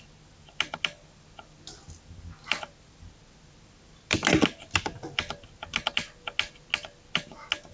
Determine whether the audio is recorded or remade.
recorded